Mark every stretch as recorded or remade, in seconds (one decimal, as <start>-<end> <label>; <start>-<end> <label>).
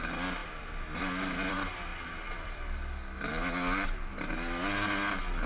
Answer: 0.0-5.5 recorded